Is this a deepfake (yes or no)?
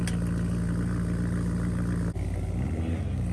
no